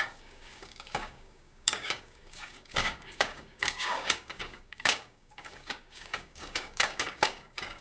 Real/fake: fake